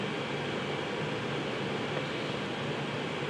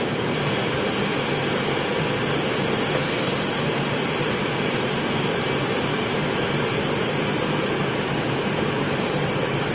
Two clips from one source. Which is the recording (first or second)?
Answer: first